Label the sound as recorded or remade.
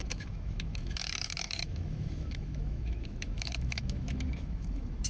remade